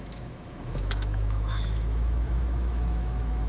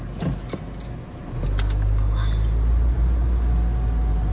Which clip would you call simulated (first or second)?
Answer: first